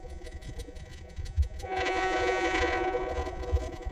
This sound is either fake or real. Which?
fake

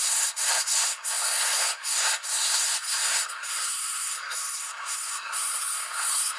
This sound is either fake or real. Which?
fake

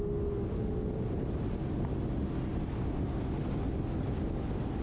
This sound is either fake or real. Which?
real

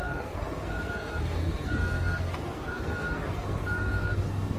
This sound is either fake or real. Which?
fake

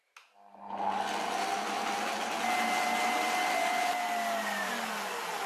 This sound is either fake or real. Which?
real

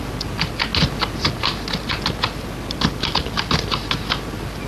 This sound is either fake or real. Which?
real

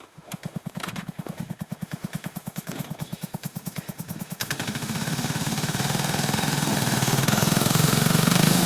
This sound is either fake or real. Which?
fake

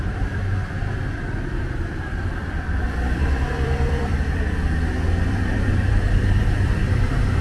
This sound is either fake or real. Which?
fake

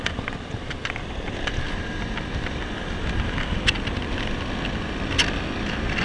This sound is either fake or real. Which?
real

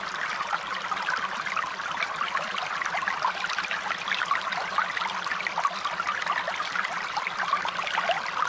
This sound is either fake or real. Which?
real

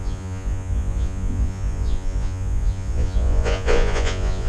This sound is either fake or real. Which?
fake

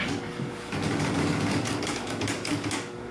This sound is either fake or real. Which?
fake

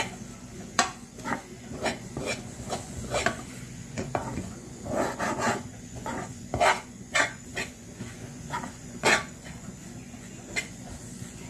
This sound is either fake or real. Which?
fake